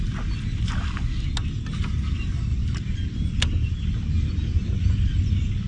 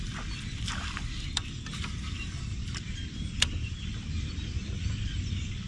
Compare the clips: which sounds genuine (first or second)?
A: first